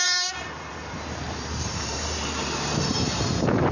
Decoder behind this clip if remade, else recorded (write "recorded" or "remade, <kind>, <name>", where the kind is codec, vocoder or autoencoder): remade, vocoder, BigVGAN v2